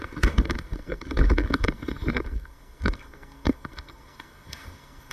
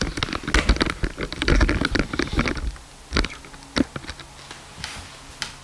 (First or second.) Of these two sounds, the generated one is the first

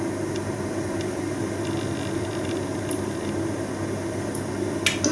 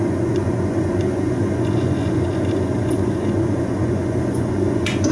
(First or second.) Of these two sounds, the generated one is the second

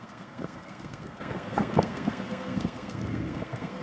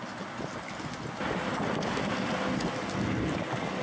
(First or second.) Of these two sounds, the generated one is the first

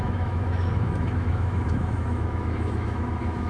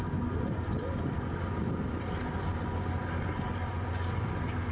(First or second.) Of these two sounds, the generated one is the first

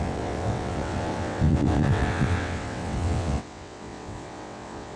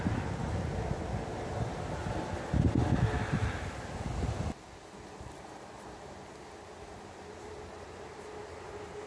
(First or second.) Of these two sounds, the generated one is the first